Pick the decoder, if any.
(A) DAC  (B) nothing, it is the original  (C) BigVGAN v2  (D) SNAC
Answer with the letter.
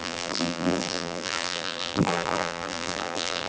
C